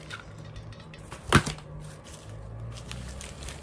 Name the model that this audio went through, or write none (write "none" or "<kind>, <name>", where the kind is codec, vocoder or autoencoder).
none